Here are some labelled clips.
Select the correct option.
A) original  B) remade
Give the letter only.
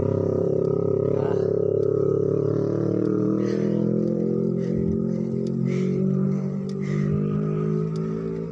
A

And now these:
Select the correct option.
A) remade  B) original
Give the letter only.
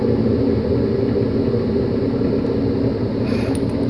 B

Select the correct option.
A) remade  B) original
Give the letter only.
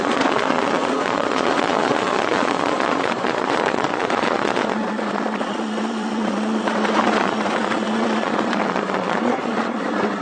A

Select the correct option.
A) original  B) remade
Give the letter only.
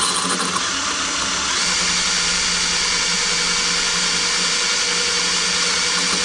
A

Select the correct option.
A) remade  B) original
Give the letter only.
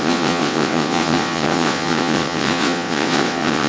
A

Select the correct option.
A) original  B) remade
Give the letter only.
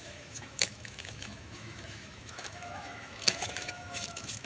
B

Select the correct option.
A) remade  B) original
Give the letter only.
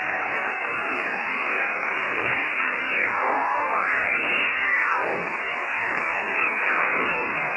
A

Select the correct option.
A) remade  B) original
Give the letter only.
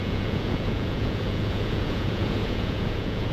A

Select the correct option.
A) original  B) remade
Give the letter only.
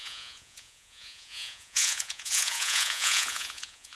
B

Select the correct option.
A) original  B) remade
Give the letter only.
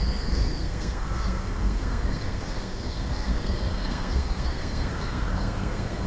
B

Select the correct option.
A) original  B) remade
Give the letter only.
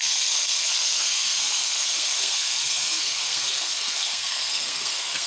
B